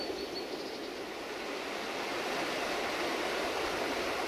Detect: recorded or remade recorded